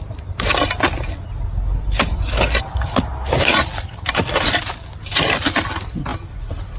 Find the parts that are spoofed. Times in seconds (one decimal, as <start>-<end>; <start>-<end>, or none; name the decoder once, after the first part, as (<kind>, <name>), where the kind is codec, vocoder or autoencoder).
none